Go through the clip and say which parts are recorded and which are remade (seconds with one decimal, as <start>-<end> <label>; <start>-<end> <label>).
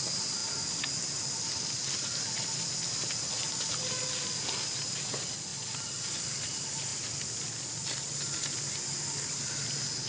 0.0-10.1 recorded